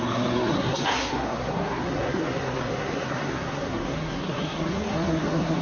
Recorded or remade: remade